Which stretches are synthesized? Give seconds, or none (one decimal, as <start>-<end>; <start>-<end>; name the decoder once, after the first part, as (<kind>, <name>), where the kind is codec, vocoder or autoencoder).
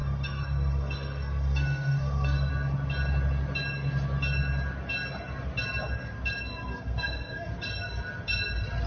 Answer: 0.0-2.5 (codec, SNAC); 6.5-7.5